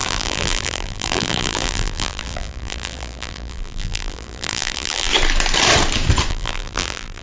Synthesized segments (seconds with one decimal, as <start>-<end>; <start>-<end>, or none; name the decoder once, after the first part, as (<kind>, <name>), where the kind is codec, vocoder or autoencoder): 0.0-5.1 (vocoder, BigVGAN v2); 6.3-7.2